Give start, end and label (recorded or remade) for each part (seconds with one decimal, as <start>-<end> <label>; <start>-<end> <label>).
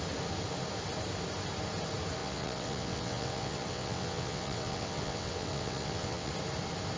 0.0-2.2 recorded; 2.2-6.3 remade; 6.3-7.0 recorded